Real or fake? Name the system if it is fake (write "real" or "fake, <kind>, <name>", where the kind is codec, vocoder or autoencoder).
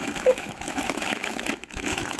fake, autoencoder, DAC-VAE